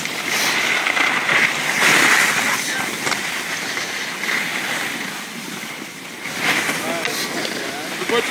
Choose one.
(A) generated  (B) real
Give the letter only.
B